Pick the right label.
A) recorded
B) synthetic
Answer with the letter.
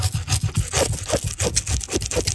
A